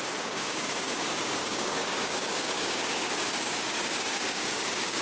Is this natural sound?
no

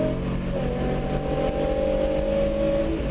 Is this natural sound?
yes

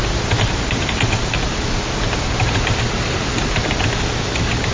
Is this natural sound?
yes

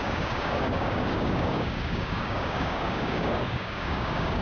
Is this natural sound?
no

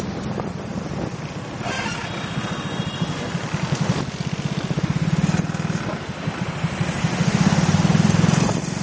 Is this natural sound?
yes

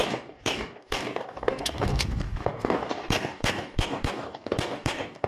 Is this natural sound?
no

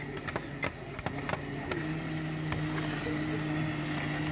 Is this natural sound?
yes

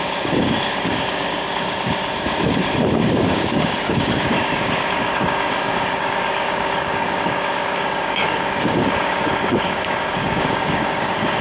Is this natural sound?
no